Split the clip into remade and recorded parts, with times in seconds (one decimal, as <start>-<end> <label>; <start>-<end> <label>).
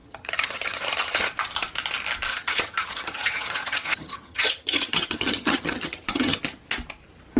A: 0.0-1.3 remade; 1.3-2.3 recorded; 2.3-6.4 remade; 6.4-7.4 recorded